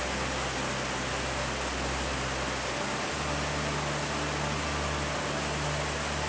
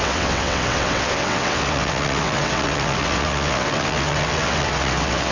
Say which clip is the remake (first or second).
second